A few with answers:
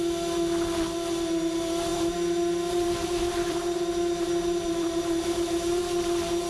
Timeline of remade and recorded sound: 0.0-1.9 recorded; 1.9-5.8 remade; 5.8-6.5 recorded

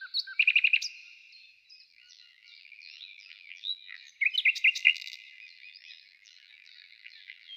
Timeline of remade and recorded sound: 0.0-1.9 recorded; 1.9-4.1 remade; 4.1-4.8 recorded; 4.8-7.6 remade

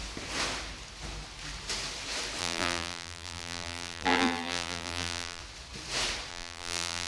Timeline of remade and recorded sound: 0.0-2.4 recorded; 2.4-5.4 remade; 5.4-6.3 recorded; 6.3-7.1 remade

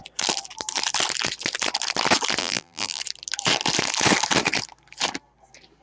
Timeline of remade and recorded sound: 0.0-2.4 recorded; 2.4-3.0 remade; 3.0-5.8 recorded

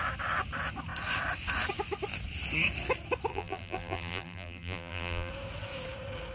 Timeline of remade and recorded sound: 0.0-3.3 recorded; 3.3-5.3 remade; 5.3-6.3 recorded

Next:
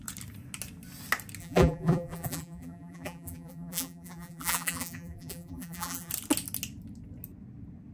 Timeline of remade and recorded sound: 0.0-1.4 recorded; 1.4-6.1 remade; 6.1-7.9 recorded

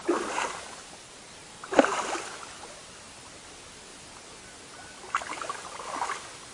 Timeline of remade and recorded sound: 0.0-6.5 recorded